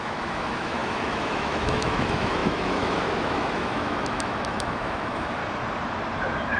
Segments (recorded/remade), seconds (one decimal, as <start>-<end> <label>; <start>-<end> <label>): 0.0-5.4 remade; 5.4-6.6 recorded